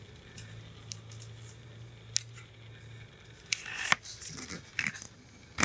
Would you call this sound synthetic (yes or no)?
no